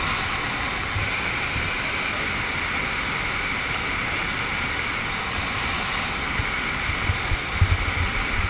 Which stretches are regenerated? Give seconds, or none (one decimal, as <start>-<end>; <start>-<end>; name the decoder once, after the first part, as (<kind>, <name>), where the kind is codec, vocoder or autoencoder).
none